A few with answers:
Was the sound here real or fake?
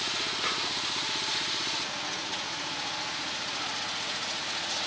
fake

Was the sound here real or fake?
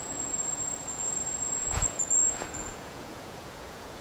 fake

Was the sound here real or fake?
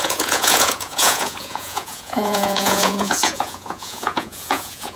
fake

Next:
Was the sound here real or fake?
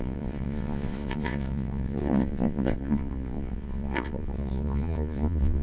fake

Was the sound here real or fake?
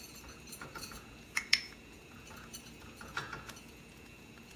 fake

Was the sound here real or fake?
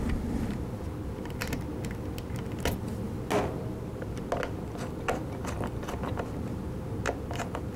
real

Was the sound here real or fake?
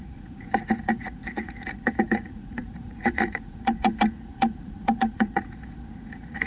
fake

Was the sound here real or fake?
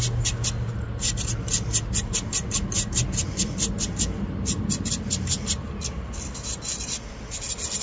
real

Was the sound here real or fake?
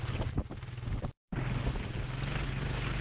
real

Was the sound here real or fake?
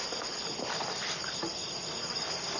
real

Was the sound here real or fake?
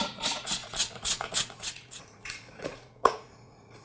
fake